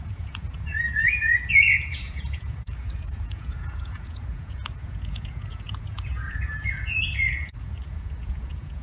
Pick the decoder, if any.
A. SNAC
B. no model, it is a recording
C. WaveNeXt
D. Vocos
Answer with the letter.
D